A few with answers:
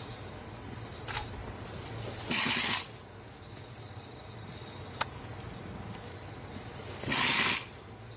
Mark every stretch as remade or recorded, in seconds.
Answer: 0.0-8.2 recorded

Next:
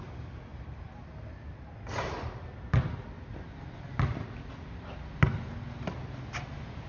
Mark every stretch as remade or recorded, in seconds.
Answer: 0.0-6.9 recorded

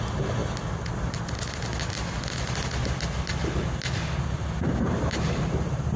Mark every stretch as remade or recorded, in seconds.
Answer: 0.0-0.4 remade; 0.4-4.0 recorded; 4.0-6.0 remade

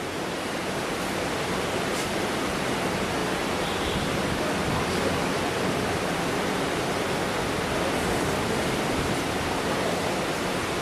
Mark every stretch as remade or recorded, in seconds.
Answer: 0.0-3.2 remade; 3.2-4.4 recorded; 4.4-10.8 remade

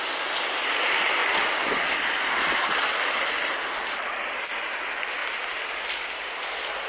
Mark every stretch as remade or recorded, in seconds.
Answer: 0.0-5.2 recorded; 5.2-6.9 remade

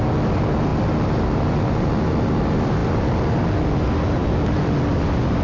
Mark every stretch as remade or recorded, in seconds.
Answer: 0.0-5.4 recorded

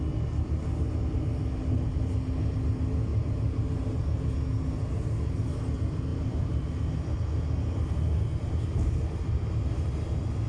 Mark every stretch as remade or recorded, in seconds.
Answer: 0.0-3.1 recorded; 3.1-4.0 remade; 4.0-6.1 recorded; 6.1-6.7 remade; 6.7-10.5 recorded

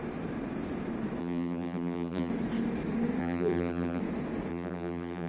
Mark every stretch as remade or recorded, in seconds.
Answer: 0.0-1.2 recorded; 1.2-2.3 remade; 2.3-3.2 recorded; 3.2-4.0 remade; 4.0-4.5 recorded; 4.5-5.3 remade